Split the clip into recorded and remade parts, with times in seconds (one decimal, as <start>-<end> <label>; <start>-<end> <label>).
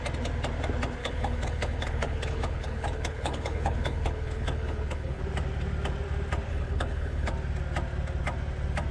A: 0.0-1.0 recorded; 1.0-5.2 remade; 5.2-6.5 recorded; 6.5-7.3 remade; 7.3-8.9 recorded